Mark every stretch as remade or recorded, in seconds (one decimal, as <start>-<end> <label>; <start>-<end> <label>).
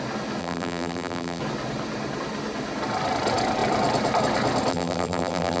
0.0-0.4 recorded; 0.4-1.4 remade; 1.4-4.7 recorded; 4.7-5.6 remade